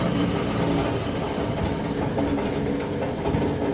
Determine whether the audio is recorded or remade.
recorded